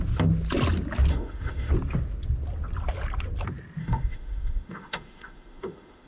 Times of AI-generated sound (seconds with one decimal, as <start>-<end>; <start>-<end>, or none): 1.1-1.7; 3.8-6.1